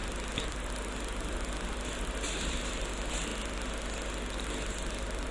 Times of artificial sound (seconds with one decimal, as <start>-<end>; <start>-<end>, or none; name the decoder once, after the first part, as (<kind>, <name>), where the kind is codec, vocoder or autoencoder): none